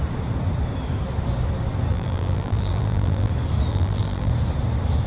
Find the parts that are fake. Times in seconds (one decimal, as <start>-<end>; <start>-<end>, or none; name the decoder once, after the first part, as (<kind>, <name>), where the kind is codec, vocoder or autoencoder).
1.9-3.3 (vocoder, BigVGAN v2); 3.7-4.3